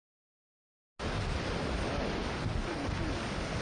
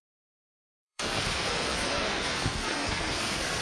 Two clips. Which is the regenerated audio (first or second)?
second